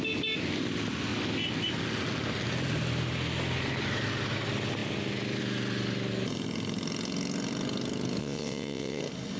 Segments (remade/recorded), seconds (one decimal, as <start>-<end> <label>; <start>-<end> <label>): 0.0-8.2 recorded; 8.2-9.0 remade; 9.0-9.4 recorded